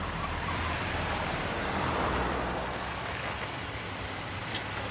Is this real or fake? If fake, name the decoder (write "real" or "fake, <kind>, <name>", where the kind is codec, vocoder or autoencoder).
fake, vocoder, BigVGAN v2